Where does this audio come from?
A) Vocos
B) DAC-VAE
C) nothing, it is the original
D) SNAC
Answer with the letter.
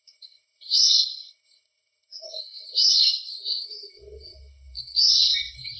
D